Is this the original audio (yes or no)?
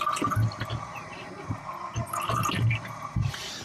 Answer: no